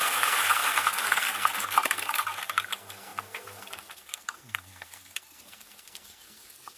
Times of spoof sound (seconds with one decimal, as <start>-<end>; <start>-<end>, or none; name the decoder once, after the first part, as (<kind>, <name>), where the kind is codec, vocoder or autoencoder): 0.0-6.8 (codec, SNAC)